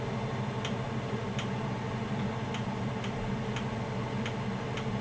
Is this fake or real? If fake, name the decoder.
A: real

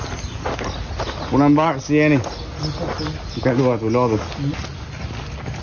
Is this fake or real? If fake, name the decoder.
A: real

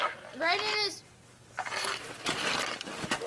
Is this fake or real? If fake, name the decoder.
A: real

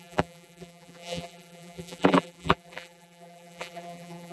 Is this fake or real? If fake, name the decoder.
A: fake, vocoder, BigVGAN v2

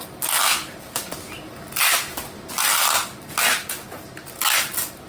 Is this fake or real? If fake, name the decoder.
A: real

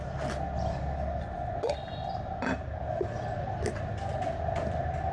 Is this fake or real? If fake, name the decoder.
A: real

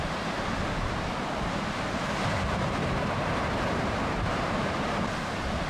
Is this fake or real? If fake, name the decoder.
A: fake, vocoder, BigVGAN v2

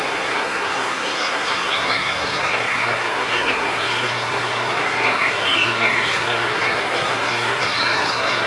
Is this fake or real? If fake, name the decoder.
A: fake, codec, SNAC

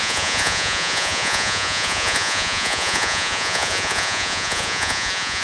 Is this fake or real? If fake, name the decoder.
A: fake, vocoder, Vocos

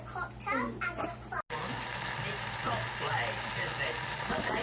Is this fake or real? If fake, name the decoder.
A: real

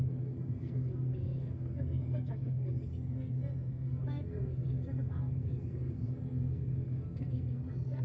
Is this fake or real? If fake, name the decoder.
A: fake, codec, SNAC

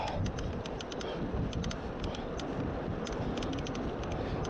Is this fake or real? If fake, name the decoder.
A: real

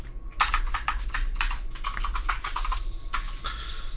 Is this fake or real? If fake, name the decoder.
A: real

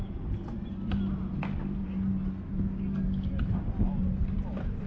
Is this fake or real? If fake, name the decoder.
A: real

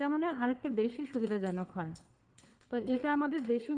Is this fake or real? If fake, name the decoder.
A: fake, codec, SNAC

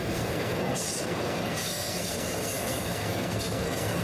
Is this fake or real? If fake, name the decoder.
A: fake, codec, SNAC